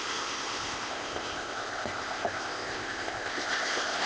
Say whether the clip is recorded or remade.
remade